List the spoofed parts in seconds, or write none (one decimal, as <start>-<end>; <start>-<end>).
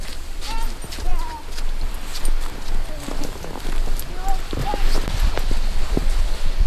4.6-5.3